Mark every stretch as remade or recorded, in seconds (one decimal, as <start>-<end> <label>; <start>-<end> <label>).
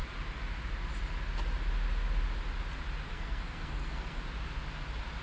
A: 0.0-3.1 recorded; 3.1-4.2 remade; 4.2-5.2 recorded